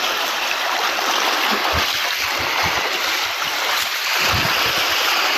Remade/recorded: recorded